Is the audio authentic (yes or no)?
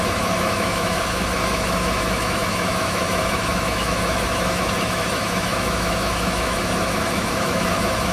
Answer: no